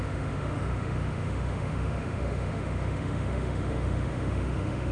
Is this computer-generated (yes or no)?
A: yes